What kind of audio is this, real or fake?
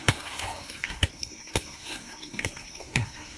fake